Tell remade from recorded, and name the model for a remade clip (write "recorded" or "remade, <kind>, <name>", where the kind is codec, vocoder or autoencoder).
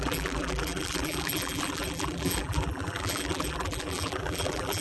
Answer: remade, vocoder, BigVGAN v2